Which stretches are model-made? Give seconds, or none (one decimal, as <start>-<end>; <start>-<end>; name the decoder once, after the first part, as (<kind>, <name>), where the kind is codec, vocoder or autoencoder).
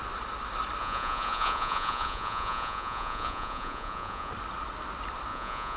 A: 0.8-4.3 (vocoder, Vocos); 5.3-5.8